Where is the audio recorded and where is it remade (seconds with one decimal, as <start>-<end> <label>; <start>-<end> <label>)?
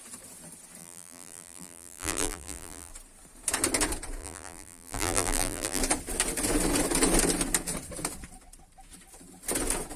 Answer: 0.0-0.8 recorded; 0.8-2.9 remade; 2.9-4.2 recorded; 4.2-5.8 remade; 5.8-10.0 recorded